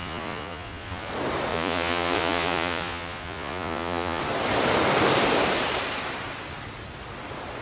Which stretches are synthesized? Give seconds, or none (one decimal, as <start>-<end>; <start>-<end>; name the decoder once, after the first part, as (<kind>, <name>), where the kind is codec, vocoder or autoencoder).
0.0-1.1 (vocoder, Vocos); 1.5-4.2